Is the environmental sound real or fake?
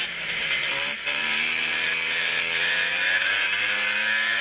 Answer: fake